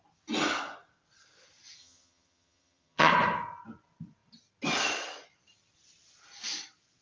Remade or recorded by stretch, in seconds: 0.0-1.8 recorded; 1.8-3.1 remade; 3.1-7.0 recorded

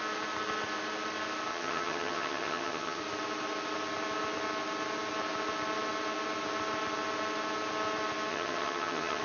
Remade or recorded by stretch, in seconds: 0.0-1.5 recorded; 1.5-3.0 remade; 3.0-8.3 recorded; 8.3-9.2 remade

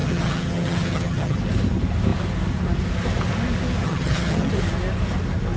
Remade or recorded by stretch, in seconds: 0.0-1.4 remade; 1.4-3.8 recorded; 3.8-4.5 remade; 4.5-5.6 recorded

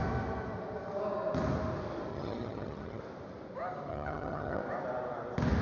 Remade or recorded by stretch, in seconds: 0.0-2.1 recorded; 2.1-3.0 remade; 3.0-3.9 recorded; 3.9-4.6 remade; 4.6-5.6 recorded